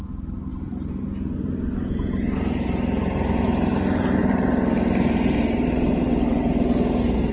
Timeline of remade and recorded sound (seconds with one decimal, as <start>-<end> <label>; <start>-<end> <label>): 0.0-7.3 recorded